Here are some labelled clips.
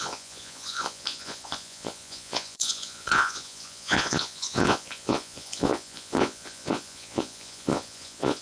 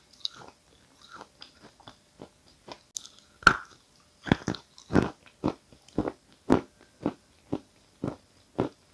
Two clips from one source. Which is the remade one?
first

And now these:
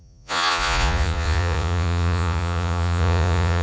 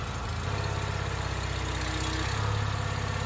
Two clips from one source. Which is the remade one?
first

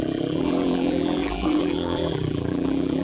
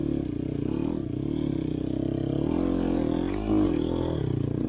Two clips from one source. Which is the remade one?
first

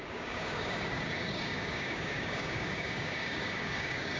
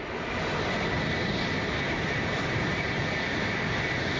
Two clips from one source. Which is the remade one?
first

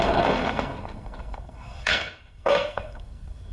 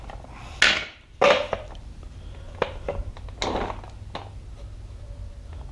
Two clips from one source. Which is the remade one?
first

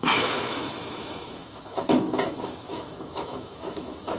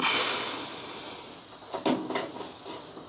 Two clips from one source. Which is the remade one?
first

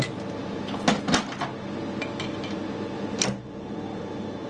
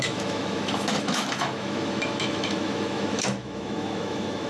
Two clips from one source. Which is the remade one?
second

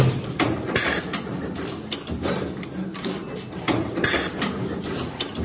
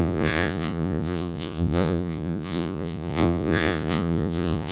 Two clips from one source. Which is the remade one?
second